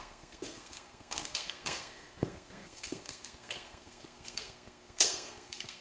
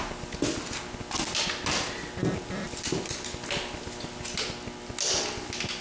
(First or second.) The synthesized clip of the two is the first